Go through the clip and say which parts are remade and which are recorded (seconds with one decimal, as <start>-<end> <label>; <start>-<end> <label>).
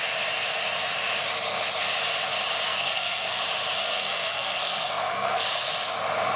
0.0-2.7 recorded; 2.7-3.4 remade; 3.4-3.8 recorded; 3.8-5.7 remade; 5.7-6.4 recorded